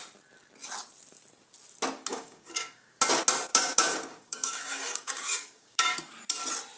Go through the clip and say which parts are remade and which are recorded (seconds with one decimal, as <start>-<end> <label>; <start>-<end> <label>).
0.0-2.1 recorded; 2.1-3.0 remade; 3.0-3.5 recorded; 3.5-6.0 remade; 6.0-6.8 recorded